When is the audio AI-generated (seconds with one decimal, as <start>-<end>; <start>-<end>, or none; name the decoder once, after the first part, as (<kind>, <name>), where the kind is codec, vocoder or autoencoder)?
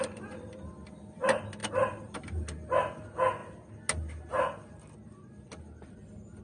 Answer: 1.6-2.2 (vocoder, BigVGAN v2)